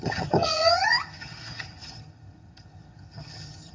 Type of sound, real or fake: fake